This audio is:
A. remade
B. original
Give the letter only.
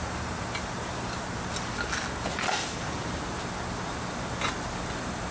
B